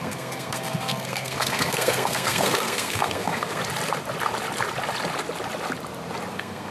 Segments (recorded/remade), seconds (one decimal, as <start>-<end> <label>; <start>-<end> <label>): 0.0-3.6 remade; 3.6-6.3 recorded; 6.3-6.7 remade